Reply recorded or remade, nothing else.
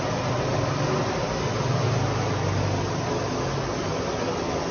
recorded